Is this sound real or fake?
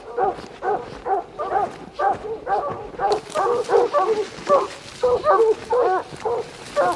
real